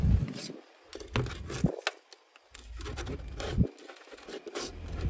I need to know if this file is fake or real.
real